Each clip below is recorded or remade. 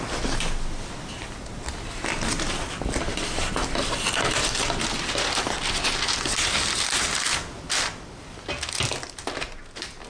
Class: recorded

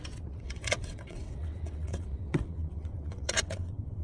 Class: remade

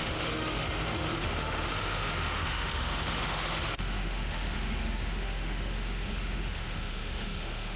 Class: remade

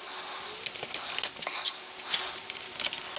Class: recorded